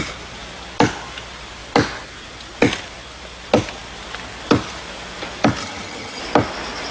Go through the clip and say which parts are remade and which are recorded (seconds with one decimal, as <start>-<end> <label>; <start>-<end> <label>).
0.0-5.6 recorded; 5.6-6.2 remade; 6.2-6.9 recorded